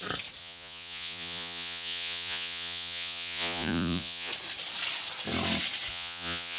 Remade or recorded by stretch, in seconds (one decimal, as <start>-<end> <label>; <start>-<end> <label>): 0.0-0.4 recorded; 0.4-4.3 remade; 4.3-5.9 recorded; 5.9-6.6 remade